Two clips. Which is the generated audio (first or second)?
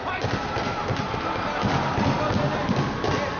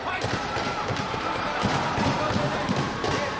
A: second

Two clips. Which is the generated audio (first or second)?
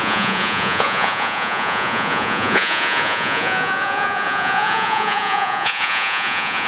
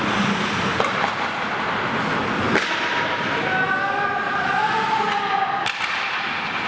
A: first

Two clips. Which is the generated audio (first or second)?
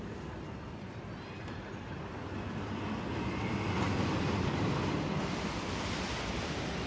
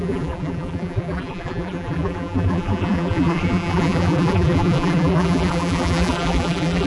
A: second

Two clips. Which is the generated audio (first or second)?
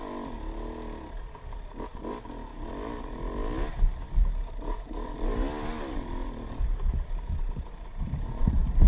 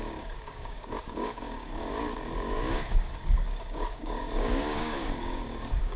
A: second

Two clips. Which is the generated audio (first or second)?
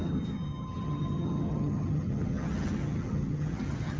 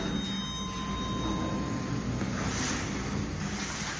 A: first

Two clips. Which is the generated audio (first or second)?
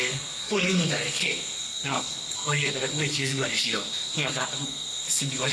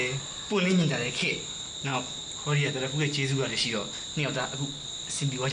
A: first